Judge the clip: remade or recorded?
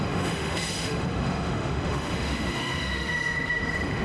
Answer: remade